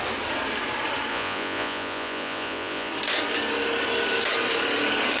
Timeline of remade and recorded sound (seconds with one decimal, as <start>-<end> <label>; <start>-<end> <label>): 0.0-1.1 recorded; 1.1-2.9 remade; 2.9-5.2 recorded

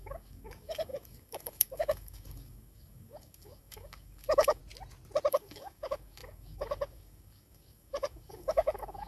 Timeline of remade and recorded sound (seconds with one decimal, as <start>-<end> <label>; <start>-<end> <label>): 0.0-4.6 remade; 4.6-5.3 recorded; 5.3-9.1 remade

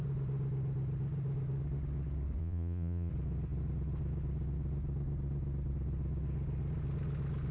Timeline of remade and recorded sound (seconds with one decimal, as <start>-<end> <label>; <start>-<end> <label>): 0.0-2.4 recorded; 2.4-3.1 remade; 3.1-7.5 recorded

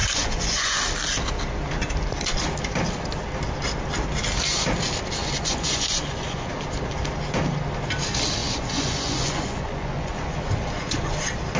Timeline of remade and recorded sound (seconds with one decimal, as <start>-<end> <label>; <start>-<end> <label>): 0.0-0.8 remade; 0.8-5.2 recorded; 5.2-6.5 remade; 6.5-8.4 recorded; 8.4-11.2 remade; 11.2-11.6 recorded

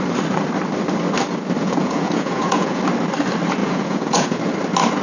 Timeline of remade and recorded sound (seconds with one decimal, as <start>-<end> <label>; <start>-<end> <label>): 0.0-1.6 recorded; 1.6-2.8 remade; 2.8-3.6 recorded; 3.6-4.4 remade; 4.4-5.0 recorded

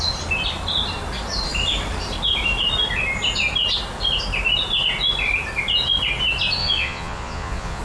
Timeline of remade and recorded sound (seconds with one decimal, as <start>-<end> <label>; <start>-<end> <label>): 0.0-6.6 recorded; 6.6-7.8 remade

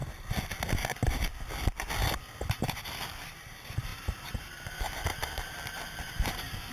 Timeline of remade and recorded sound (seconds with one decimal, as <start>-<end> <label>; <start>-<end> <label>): 0.0-2.4 recorded; 2.4-6.7 remade